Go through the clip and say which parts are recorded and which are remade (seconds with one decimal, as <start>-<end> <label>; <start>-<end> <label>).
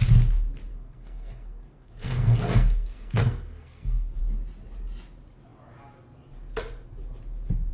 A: 0.0-0.7 recorded; 0.7-4.2 remade; 4.2-7.7 recorded